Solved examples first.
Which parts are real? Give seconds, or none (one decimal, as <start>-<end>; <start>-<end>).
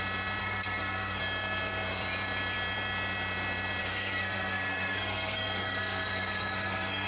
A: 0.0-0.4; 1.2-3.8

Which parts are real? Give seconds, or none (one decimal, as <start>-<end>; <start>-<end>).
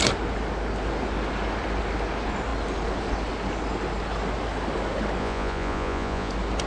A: 0.0-5.2; 6.3-6.7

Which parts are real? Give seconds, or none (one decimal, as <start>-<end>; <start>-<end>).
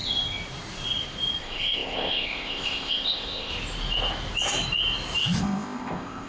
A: 0.0-1.4; 3.5-5.4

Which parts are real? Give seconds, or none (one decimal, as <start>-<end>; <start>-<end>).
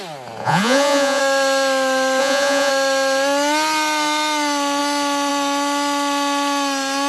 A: 0.0-0.4; 1.2-2.2; 2.7-7.1